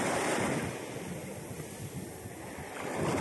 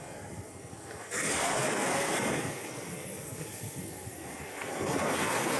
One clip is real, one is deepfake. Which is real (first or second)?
first